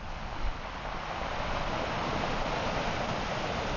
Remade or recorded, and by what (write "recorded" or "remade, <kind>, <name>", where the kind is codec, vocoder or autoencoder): recorded